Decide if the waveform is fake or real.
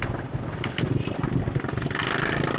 real